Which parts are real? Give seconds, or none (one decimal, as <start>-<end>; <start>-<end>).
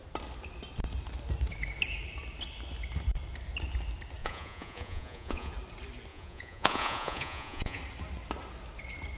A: 0.0-4.2; 5.5-6.1; 7.8-9.2